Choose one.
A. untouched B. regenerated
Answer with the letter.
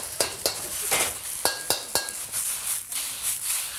A